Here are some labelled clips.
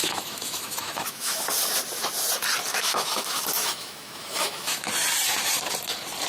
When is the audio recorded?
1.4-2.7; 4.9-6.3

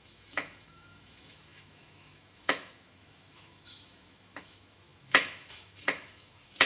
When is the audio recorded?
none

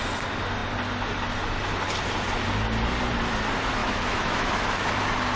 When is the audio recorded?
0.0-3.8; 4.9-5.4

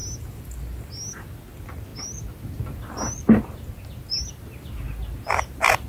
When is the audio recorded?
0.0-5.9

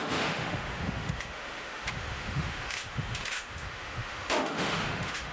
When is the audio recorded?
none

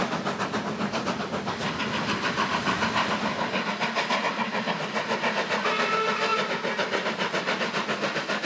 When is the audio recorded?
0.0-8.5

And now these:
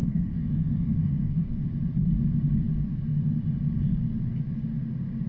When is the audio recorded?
1.6-5.3

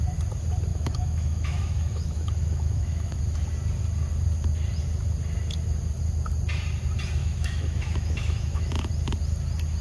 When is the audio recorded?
0.0-0.7; 3.2-7.2; 8.9-9.8